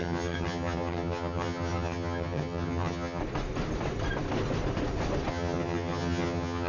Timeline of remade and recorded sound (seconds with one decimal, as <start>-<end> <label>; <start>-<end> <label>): 0.0-3.2 remade; 3.2-5.3 recorded; 5.3-6.7 remade